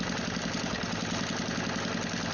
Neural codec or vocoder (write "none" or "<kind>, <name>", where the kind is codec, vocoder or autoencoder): none